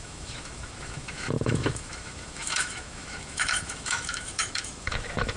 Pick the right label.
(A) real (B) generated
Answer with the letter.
B